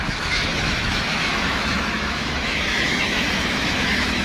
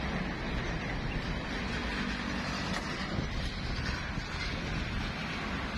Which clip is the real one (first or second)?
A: second